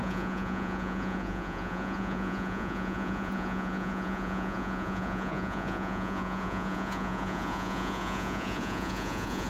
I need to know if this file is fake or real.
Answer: fake